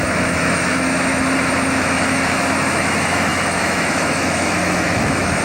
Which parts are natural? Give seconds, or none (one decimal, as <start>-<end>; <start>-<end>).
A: 1.1-1.8